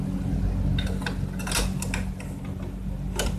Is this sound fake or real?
real